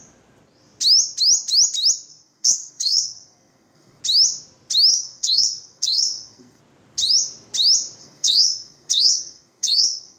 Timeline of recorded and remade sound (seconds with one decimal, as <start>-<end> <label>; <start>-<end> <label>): 0.0-2.1 recorded; 2.1-4.0 remade; 4.0-4.9 recorded; 4.9-6.6 remade; 6.6-8.0 recorded; 8.0-10.2 remade